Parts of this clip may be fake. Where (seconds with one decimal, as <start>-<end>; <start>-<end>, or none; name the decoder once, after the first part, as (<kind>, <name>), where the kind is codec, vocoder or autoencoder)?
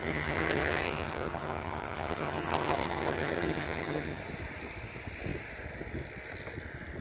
0.0-4.2 (vocoder, HiFi-GAN)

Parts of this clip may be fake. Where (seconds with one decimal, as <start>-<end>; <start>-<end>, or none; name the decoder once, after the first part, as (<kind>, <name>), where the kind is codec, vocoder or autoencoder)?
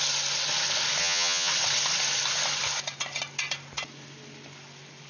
1.0-1.5 (vocoder, HiFi-GAN)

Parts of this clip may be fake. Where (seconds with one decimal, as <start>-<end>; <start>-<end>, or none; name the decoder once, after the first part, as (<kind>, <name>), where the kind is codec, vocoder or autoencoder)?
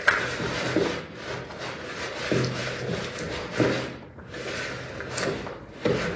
none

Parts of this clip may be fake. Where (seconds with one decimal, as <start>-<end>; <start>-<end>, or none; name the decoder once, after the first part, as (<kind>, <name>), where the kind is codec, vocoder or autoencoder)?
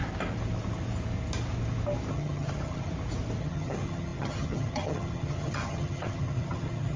2.1-2.9 (vocoder, HiFi-GAN); 3.4-7.0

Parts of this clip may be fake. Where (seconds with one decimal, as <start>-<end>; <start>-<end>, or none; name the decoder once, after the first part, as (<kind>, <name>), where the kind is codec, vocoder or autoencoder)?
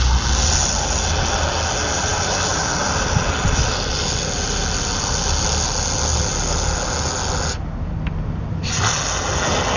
none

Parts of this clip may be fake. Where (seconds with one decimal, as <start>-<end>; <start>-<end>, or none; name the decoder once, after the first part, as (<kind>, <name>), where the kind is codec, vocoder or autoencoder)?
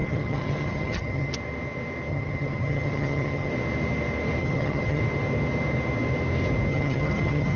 0.0-1.3 (vocoder, HiFi-GAN); 2.1-3.5; 4.4-5.0; 6.7-7.6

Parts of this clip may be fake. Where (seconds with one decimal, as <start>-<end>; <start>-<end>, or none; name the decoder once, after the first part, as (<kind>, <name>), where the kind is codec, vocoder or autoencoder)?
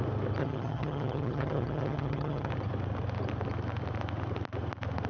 0.4-2.5 (vocoder, HiFi-GAN)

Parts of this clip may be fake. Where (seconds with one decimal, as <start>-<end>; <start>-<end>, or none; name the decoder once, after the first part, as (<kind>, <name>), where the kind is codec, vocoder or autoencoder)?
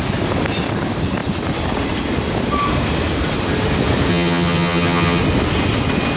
4.1-5.2 (vocoder, HiFi-GAN)